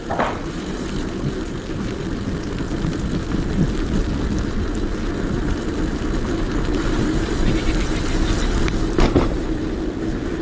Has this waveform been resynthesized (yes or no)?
no